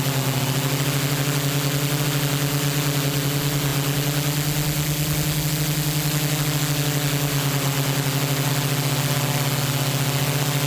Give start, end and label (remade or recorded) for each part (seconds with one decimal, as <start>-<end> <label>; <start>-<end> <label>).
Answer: 0.0-10.7 recorded